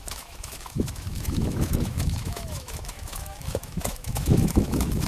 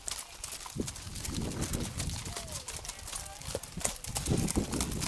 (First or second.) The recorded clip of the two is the second